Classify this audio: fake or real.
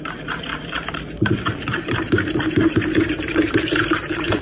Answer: fake